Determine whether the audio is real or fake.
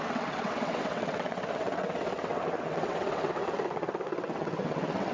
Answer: fake